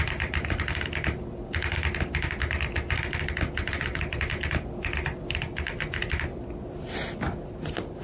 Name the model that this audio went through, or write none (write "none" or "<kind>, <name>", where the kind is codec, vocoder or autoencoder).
none